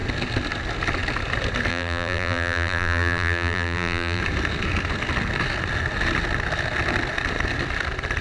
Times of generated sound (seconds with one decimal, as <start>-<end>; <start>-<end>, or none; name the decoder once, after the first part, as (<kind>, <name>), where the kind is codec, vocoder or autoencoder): 1.7-4.2 (vocoder, BigVGAN v2)